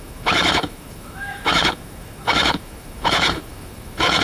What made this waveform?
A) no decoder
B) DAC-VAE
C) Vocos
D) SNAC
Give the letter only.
B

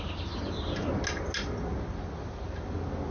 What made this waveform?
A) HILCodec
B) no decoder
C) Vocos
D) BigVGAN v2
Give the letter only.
B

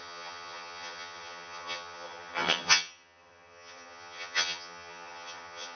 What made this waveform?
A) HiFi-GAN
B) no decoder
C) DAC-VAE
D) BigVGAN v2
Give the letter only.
A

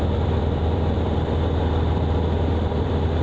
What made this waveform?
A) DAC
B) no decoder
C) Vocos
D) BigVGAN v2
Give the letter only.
D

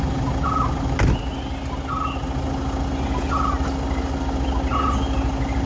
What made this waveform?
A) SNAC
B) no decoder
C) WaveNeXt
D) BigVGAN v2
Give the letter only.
B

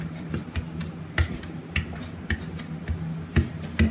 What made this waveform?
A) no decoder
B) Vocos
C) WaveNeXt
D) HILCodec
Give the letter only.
A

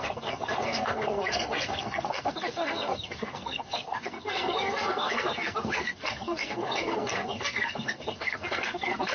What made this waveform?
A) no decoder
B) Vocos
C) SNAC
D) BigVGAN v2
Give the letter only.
C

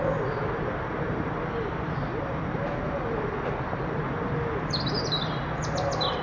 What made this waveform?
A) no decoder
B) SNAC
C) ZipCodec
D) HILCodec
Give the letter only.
A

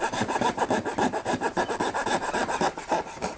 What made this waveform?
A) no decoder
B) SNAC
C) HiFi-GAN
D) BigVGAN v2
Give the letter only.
D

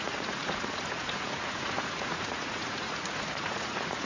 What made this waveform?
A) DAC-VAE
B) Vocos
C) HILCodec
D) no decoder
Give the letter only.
B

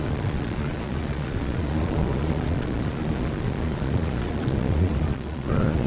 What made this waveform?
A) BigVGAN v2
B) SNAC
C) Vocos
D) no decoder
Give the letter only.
C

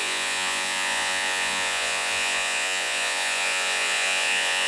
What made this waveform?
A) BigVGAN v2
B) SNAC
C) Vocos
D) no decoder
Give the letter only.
C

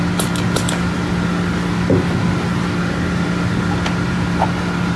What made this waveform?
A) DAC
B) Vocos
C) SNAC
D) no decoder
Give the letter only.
D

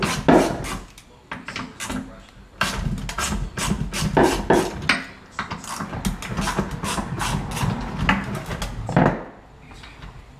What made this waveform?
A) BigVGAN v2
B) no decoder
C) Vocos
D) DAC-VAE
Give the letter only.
B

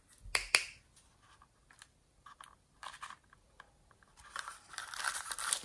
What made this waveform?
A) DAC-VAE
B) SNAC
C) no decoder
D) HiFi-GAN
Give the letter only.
C